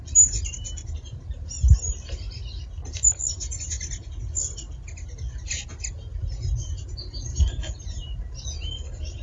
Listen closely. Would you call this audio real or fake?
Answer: real